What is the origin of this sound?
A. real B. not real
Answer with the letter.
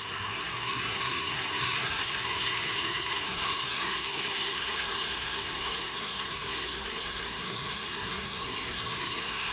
B